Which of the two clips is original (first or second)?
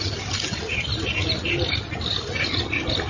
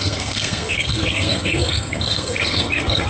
first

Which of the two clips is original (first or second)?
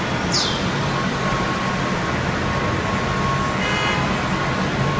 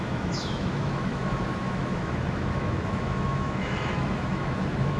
first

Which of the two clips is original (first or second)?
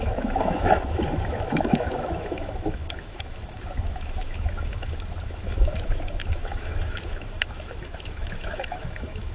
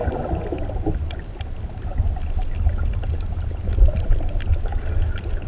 second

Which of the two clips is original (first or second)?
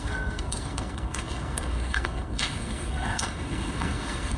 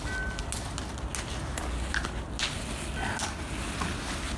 second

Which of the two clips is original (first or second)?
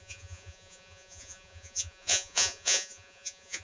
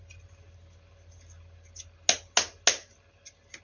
second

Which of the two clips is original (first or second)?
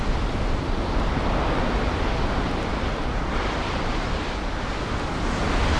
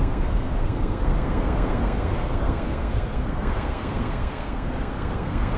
first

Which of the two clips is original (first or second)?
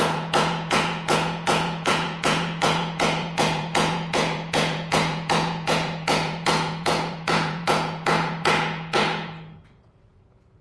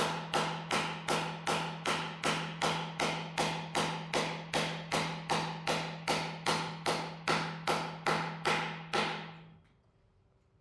second